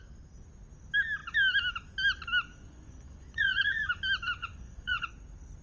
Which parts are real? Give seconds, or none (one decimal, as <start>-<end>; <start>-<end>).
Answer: 0.0-2.5; 3.9-4.4; 5.1-5.6